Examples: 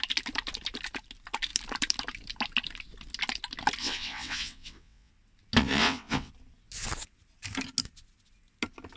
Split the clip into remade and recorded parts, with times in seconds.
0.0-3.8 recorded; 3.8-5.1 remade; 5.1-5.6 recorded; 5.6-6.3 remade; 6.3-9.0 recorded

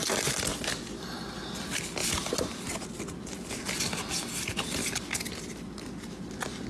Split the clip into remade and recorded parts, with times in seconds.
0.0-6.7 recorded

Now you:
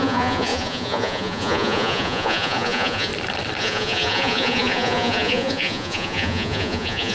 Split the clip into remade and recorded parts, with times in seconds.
0.0-3.1 remade; 3.1-3.6 recorded; 3.6-7.1 remade